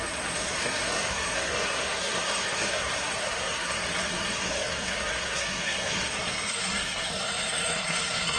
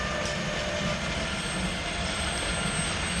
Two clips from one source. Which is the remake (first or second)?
first